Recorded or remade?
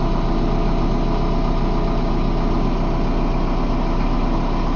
recorded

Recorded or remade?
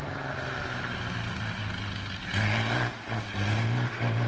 recorded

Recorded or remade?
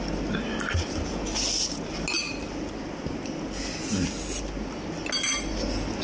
recorded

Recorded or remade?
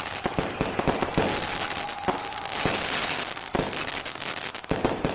recorded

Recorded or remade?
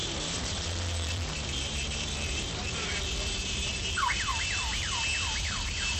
remade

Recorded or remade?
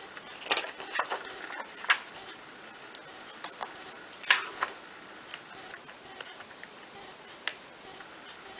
recorded